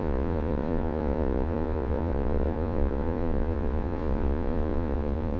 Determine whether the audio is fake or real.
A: fake